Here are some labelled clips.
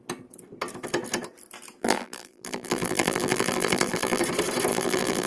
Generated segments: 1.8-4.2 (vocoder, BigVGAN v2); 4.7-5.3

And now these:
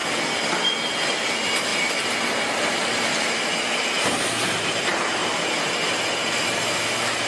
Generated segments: 1.0-5.2 (vocoder, BigVGAN v2); 6.3-7.3

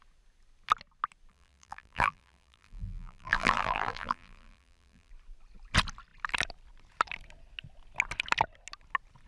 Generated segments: 1.3-5.1 (vocoder, BigVGAN v2)

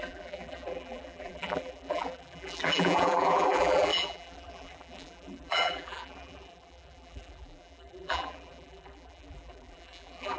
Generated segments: 0.0-10.4 (vocoder, BigVGAN v2)

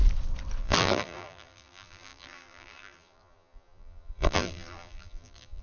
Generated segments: 0.6-5.6 (vocoder, BigVGAN v2)

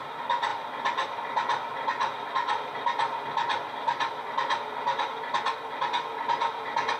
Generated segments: none